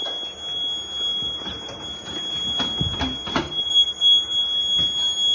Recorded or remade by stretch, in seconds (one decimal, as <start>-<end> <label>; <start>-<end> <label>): 0.0-1.1 recorded; 1.1-3.7 remade; 3.7-5.3 recorded